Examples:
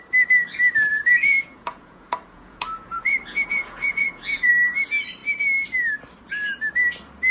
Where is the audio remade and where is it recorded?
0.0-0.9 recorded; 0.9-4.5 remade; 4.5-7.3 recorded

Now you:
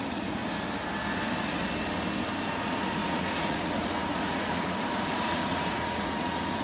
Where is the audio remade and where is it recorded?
0.0-0.4 remade; 0.4-2.5 recorded; 2.5-6.6 remade

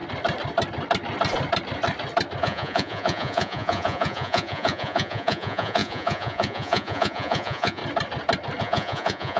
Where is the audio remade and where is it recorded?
0.0-2.4 recorded; 2.4-7.8 remade; 7.8-8.6 recorded; 8.6-9.4 remade

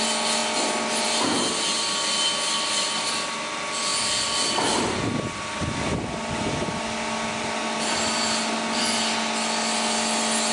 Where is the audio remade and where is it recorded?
0.0-10.5 recorded

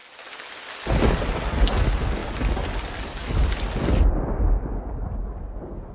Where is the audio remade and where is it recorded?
0.0-5.9 recorded

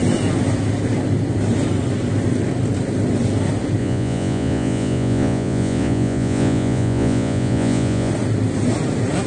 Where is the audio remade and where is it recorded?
0.0-3.8 recorded; 3.8-8.1 remade; 8.1-9.3 recorded